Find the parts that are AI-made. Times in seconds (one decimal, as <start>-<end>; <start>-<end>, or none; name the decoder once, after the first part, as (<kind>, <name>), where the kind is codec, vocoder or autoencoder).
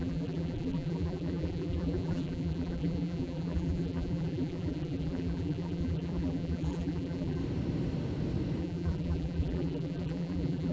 0.0-7.4 (vocoder, BigVGAN v2); 8.6-10.7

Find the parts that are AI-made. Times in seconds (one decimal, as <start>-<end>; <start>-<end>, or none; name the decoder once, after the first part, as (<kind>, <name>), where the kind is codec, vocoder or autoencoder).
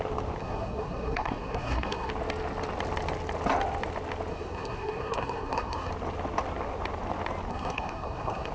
0.4-2.1 (codec, SNAC); 4.3-5.9; 7.5-8.5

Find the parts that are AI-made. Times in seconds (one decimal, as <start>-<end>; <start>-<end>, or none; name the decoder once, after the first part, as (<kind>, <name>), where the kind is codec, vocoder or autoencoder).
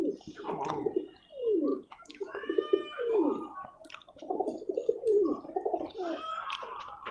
1.7-3.0 (autoencoder, DAC-VAE)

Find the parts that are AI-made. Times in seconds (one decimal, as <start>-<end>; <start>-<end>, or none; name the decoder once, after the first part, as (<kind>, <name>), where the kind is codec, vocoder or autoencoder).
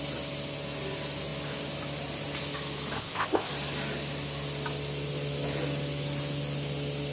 3.0-3.5 (codec, ZipCodec)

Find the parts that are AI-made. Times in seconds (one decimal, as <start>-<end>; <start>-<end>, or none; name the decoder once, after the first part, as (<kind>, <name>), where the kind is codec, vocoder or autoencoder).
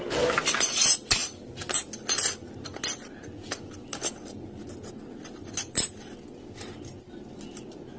none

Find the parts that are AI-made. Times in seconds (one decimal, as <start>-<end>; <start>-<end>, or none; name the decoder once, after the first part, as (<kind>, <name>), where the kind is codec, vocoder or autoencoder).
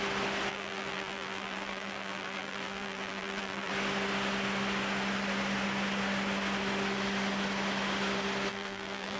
0.5-3.7 (vocoder, BigVGAN v2); 8.5-9.2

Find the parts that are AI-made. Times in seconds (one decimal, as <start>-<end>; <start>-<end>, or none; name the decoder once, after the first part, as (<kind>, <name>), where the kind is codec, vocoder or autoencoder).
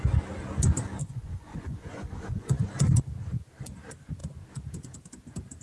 1.0-2.7 (vocoder, Vocos)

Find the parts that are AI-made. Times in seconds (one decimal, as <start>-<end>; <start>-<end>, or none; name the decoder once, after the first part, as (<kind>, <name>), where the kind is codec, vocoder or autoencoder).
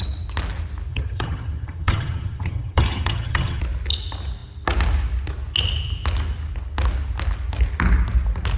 0.9-3.6 (vocoder, HiFi-GAN)